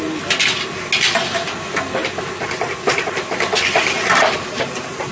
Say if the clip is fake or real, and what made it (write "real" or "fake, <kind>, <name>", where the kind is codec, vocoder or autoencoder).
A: real